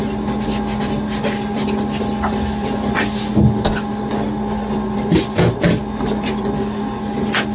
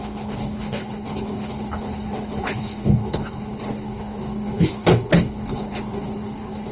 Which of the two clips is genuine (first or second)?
first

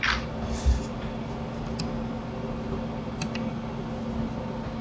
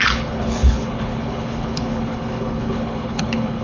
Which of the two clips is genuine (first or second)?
first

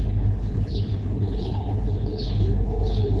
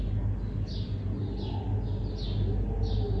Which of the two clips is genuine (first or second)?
second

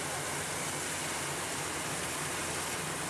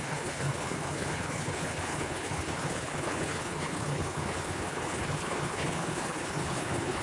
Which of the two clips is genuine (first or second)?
first